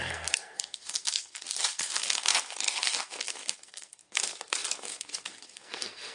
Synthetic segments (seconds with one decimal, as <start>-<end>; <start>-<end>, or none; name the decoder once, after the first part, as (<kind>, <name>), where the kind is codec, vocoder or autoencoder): 0.0-6.1 (codec, SNAC)